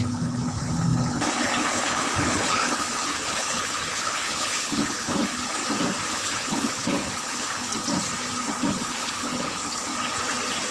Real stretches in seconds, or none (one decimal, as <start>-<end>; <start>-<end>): 5.6-6.1; 7.7-8.7; 9.9-10.7